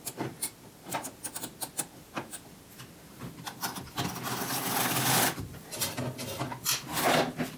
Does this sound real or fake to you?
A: real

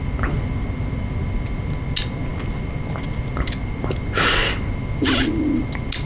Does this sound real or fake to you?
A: real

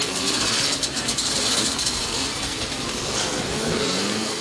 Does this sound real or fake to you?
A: fake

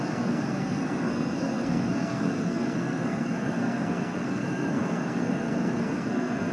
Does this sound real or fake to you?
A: fake